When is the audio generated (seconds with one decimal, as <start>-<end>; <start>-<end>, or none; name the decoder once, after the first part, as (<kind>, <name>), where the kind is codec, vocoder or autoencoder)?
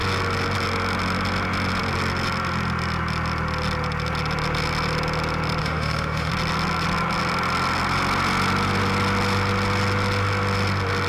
5.6-6.3 (autoencoder, DAC-VAE)